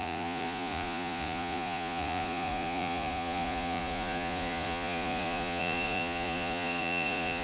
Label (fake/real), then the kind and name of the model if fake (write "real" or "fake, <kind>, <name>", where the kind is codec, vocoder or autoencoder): fake, vocoder, Vocos